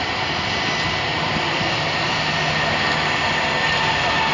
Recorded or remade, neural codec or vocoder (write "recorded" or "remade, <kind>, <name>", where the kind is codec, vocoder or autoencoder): recorded